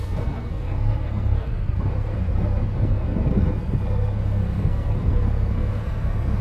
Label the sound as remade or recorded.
remade